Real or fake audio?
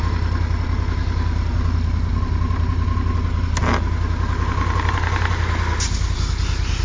real